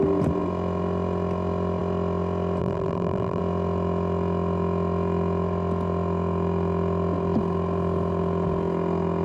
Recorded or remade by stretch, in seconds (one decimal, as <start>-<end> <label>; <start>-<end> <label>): 0.0-2.6 recorded; 2.6-3.4 remade; 3.4-9.2 recorded